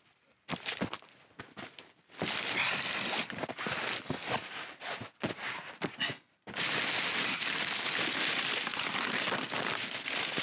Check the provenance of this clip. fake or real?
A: real